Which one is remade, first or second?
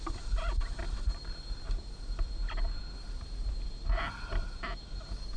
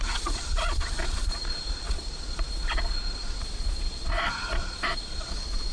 second